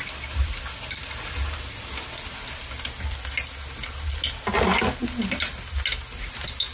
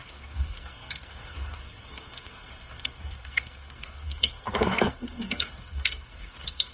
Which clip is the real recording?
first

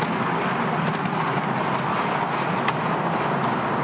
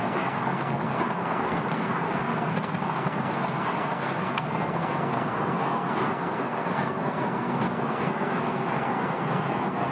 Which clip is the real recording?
first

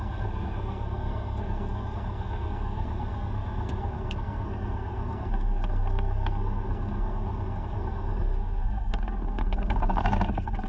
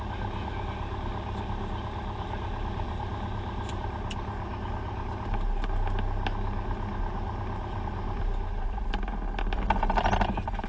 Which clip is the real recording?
second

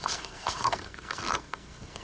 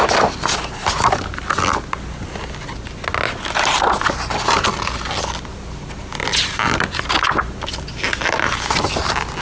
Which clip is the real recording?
second